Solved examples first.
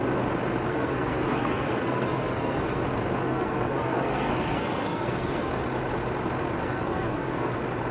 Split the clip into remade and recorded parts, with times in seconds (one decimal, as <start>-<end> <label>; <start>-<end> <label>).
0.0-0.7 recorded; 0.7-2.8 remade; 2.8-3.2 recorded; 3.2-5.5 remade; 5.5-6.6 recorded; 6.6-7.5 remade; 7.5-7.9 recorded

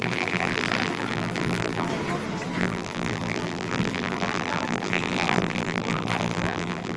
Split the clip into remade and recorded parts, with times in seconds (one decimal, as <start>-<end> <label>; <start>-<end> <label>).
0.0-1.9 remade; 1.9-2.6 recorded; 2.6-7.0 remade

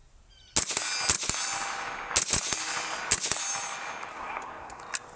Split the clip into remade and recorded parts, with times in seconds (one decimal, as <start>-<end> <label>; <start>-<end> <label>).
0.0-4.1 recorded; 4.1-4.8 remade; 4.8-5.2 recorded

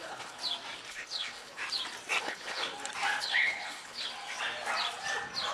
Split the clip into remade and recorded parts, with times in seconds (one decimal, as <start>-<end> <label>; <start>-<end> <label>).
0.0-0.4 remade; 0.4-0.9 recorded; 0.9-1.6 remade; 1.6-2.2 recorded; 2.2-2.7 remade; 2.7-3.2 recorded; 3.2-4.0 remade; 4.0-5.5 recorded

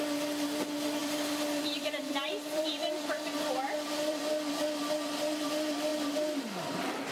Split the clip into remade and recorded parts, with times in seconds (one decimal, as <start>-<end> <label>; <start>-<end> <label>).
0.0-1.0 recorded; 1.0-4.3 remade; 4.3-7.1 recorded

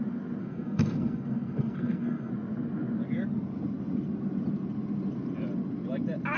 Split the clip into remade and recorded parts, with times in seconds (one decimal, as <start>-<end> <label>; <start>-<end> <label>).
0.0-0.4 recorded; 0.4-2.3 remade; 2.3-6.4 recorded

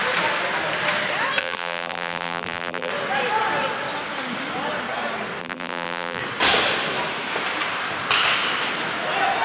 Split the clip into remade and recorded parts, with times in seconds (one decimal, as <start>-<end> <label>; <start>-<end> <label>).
0.0-1.4 recorded; 1.4-2.9 remade; 2.9-5.4 recorded; 5.4-6.2 remade; 6.2-9.4 recorded